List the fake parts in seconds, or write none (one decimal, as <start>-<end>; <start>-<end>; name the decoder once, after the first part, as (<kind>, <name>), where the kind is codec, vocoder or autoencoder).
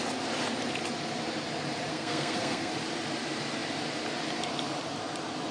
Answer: 1.9-2.7 (codec, SNAC)